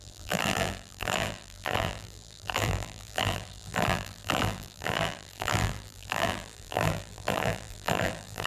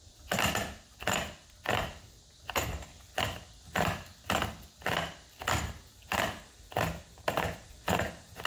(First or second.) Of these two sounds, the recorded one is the second